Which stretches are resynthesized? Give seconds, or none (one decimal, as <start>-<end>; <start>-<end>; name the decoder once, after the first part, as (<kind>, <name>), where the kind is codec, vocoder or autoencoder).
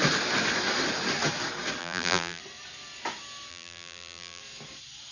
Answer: 1.8-2.4 (vocoder, BigVGAN v2); 3.5-4.4